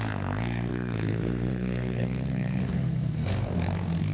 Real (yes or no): no